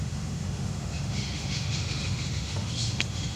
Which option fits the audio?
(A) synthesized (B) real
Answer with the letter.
A